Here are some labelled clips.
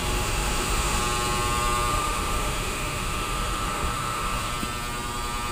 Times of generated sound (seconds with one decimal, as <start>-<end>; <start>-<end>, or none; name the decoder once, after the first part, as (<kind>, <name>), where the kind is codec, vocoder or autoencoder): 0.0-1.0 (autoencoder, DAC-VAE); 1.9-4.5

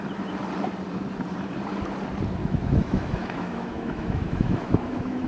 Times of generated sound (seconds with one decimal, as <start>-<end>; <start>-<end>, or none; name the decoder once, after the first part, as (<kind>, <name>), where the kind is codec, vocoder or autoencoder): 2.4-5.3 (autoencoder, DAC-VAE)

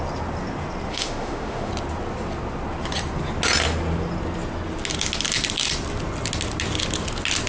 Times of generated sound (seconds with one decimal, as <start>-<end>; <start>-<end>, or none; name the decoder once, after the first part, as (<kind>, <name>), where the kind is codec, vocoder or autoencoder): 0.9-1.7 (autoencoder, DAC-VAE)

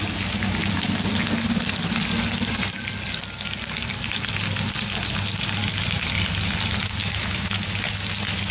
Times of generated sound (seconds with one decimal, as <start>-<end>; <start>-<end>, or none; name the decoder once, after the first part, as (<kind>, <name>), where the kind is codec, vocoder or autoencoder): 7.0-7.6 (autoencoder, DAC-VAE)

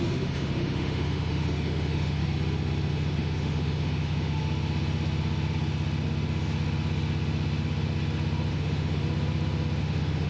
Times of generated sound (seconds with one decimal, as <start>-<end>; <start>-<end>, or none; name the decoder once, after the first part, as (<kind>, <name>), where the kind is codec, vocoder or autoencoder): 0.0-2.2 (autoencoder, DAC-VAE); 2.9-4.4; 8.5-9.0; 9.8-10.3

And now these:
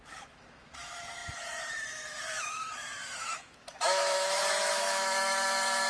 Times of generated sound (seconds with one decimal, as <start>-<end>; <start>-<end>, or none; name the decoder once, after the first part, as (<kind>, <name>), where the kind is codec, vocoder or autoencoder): 0.0-5.9 (autoencoder, DAC-VAE)

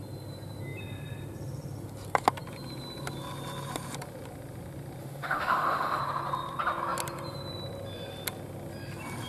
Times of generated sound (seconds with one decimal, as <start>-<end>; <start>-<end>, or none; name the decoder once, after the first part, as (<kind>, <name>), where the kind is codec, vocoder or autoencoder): 5.0-6.0 (autoencoder, DAC-VAE)

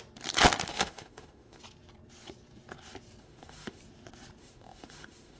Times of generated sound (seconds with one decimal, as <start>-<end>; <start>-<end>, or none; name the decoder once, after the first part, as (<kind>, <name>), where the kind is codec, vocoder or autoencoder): 0.7-1.6 (autoencoder, DAC-VAE); 3.2-3.8; 4.4-5.4